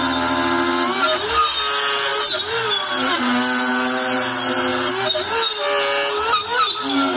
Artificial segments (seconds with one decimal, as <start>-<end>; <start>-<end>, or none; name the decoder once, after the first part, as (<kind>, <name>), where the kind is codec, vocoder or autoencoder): none